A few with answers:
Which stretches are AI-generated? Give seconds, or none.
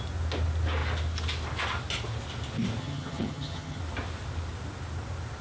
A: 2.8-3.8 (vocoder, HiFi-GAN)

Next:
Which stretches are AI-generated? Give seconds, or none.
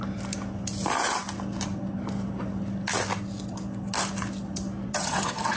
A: 4.9-5.6 (vocoder, HiFi-GAN)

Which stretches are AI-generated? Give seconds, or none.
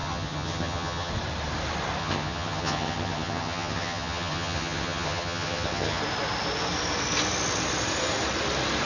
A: 0.0-1.1 (vocoder, HiFi-GAN); 2.0-6.0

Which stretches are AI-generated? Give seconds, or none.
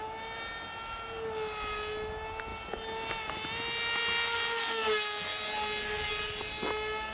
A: none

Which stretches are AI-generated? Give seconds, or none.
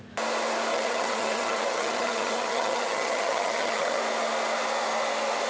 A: 0.7-4.0 (vocoder, HiFi-GAN)